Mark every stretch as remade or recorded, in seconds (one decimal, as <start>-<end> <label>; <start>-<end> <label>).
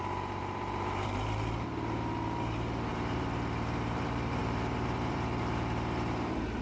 0.0-6.6 remade